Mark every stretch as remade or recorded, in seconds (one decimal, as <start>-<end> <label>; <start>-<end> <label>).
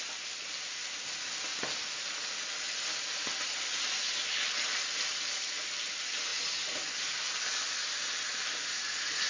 0.0-9.3 recorded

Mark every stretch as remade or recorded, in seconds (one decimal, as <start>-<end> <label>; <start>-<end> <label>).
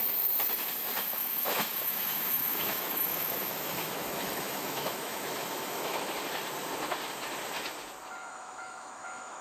0.0-1.1 recorded; 1.1-6.1 remade; 6.1-8.2 recorded; 8.2-9.4 remade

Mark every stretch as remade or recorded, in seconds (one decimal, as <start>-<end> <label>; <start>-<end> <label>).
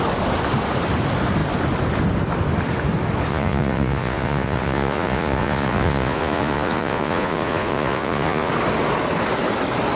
0.0-3.3 recorded; 3.3-8.5 remade; 8.5-10.0 recorded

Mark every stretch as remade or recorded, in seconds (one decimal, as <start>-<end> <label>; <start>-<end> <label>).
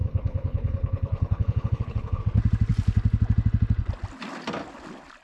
0.0-2.2 remade; 2.2-5.2 recorded